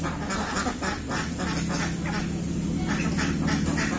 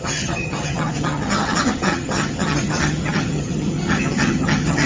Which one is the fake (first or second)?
second